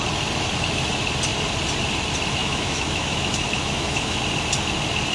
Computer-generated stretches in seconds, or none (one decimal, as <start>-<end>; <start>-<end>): 2.4-4.2